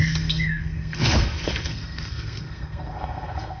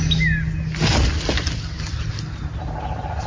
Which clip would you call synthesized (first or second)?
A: first